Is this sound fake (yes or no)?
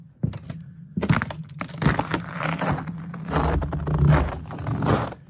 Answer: no